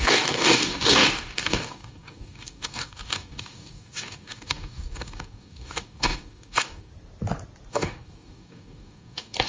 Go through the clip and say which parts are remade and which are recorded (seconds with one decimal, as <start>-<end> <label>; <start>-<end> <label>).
0.0-6.9 remade; 6.9-7.7 recorded; 7.7-9.5 remade